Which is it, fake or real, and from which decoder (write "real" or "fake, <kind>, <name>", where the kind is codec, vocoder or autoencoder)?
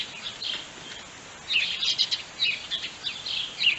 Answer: real